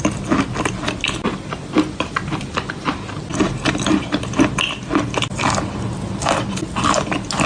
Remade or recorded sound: recorded